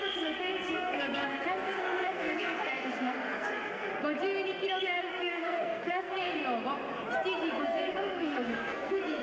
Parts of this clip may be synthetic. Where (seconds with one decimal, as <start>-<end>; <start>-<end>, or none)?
0.0-3.9; 4.8-6.4; 7.6-9.2